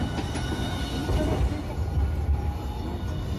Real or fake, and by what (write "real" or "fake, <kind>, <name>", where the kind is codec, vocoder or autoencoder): real